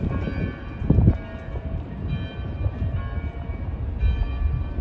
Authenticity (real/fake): real